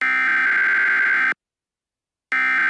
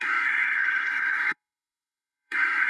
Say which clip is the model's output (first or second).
second